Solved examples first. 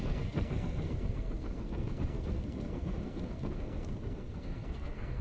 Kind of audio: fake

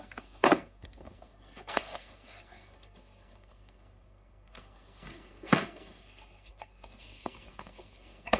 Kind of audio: fake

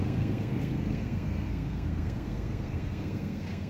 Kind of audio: fake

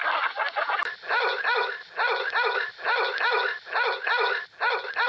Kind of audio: real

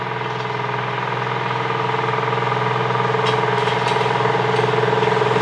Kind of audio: real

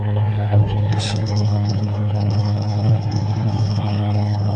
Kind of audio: fake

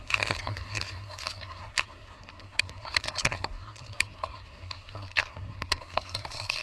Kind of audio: fake